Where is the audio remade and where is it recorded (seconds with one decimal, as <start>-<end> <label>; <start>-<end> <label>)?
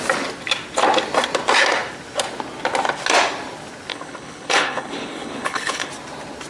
0.0-3.9 recorded; 3.9-5.9 remade; 5.9-6.5 recorded